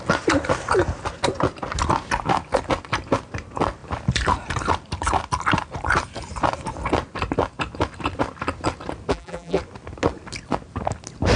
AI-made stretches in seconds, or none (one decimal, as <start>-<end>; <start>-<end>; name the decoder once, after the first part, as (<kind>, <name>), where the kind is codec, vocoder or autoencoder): 9.1-9.6 (vocoder, BigVGAN v2)